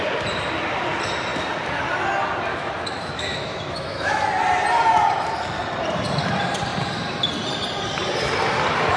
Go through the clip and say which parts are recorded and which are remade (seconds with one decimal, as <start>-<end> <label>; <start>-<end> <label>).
0.0-2.5 recorded; 2.5-4.2 remade; 4.2-9.0 recorded